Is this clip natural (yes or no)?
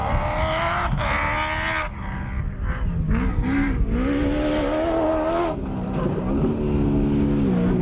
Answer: yes